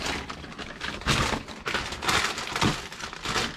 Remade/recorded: recorded